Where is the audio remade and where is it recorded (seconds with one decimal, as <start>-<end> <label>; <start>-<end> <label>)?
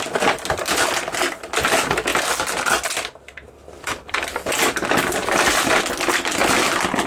0.0-5.2 recorded; 5.2-5.8 remade; 5.8-6.4 recorded; 6.4-7.1 remade